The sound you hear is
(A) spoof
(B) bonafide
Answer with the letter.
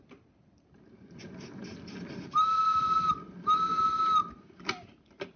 B